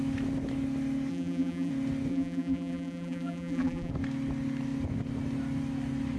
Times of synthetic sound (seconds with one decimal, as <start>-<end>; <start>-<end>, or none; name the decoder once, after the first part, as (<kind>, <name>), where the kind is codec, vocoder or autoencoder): 1.1-1.7 (vocoder, BigVGAN v2); 2.1-3.9